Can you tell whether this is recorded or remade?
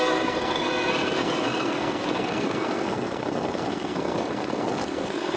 remade